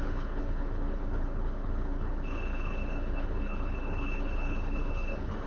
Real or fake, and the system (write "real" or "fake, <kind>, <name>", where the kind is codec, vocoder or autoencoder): fake, codec, HILCodec